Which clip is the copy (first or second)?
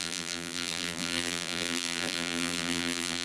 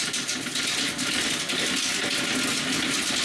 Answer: first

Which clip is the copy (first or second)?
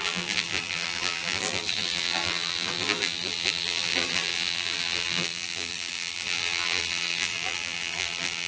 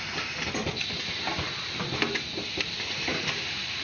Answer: first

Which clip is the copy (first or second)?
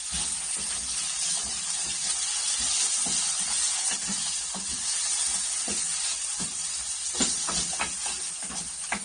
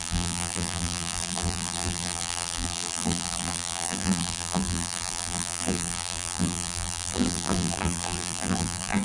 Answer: second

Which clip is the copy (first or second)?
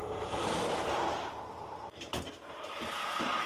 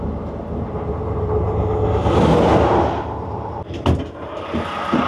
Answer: first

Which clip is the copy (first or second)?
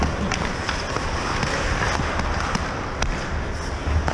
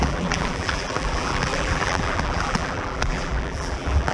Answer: second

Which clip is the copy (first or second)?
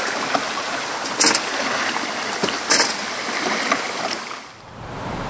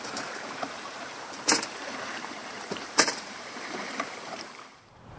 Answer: second